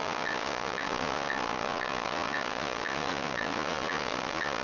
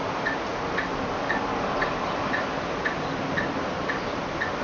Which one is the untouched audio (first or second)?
second